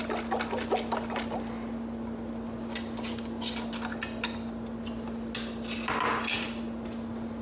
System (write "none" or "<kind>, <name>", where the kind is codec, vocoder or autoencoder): none